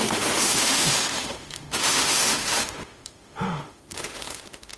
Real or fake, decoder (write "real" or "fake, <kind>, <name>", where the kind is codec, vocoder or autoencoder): fake, autoencoder, DAC-VAE